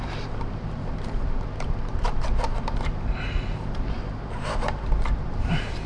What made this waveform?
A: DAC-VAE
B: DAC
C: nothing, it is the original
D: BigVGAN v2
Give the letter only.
D